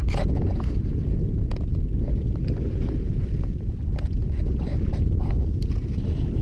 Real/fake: real